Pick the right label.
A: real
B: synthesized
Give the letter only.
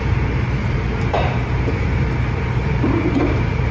B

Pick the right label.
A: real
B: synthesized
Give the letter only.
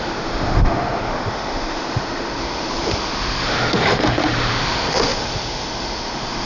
B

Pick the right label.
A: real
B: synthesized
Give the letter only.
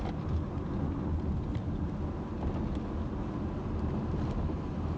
A